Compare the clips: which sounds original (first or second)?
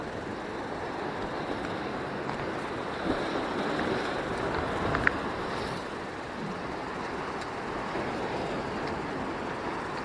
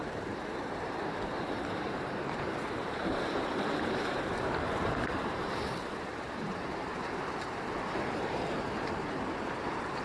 first